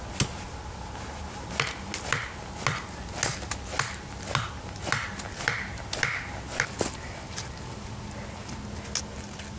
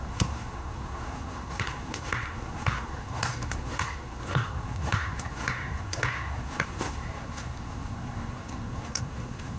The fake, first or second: second